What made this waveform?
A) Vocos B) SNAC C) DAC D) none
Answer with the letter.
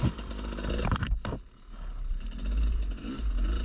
D